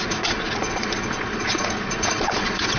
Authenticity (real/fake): fake